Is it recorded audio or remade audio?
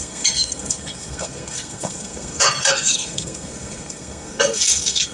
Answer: remade